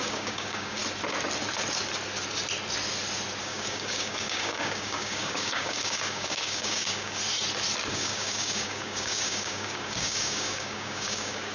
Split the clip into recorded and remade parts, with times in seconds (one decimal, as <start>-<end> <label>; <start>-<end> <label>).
0.0-0.8 remade; 0.8-3.4 recorded; 3.4-7.2 remade; 7.2-7.9 recorded; 7.9-11.5 remade